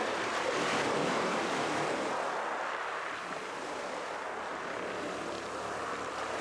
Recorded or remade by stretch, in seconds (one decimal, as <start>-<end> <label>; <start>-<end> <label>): 0.0-6.4 recorded